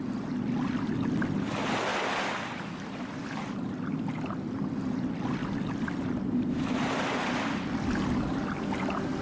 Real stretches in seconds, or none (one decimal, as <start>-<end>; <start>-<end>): 0.0-9.2